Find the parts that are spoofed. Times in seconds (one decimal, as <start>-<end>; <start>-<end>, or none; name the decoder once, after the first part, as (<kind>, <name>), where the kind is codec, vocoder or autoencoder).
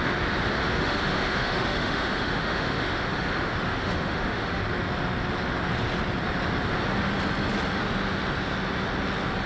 0.6-4.6 (autoencoder, DAC-VAE)